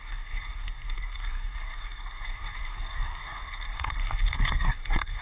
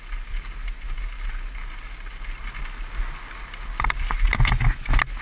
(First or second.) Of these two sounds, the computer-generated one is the first